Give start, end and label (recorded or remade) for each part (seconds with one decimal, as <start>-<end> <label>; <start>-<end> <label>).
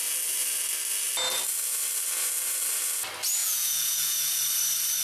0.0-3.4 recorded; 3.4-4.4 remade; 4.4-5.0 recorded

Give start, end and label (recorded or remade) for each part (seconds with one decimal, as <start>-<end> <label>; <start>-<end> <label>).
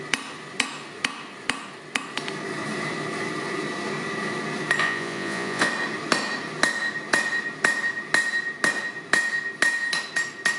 0.0-4.8 recorded; 4.8-5.7 remade; 5.7-10.6 recorded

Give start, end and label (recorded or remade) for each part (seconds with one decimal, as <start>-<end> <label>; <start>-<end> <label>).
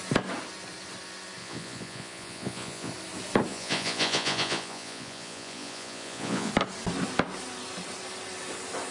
0.0-1.4 recorded; 1.4-2.9 remade; 2.9-3.5 recorded; 3.5-6.5 remade; 6.5-8.9 recorded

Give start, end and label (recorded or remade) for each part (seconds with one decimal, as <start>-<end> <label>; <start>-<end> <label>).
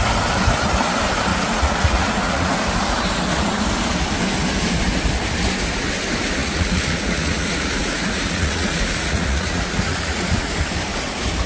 0.0-1.3 recorded; 1.3-2.5 remade; 2.5-6.4 recorded; 6.4-10.5 remade; 10.5-11.5 recorded